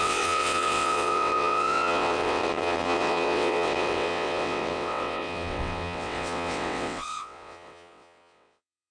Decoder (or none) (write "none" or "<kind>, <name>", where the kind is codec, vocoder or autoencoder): vocoder, WaveNeXt